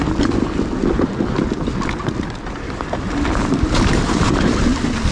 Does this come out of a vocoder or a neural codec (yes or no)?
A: no